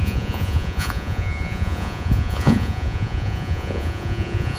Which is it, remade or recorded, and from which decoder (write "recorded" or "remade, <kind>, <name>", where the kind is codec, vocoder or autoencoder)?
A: remade, vocoder, Vocos